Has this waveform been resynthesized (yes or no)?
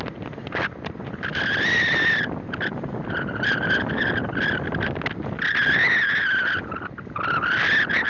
no